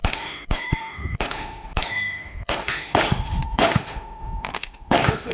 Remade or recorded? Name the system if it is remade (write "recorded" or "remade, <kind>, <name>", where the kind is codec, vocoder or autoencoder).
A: remade, autoencoder, DAC-VAE